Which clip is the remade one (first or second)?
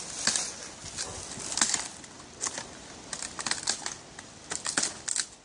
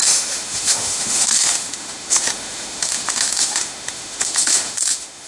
second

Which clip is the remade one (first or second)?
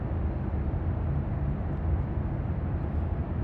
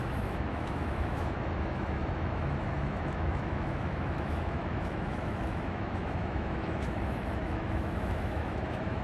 second